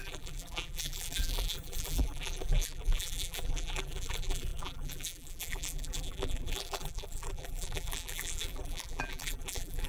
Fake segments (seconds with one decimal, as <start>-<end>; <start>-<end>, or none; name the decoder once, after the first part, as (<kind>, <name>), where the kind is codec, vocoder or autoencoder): 0.0-9.9 (vocoder, BigVGAN v2)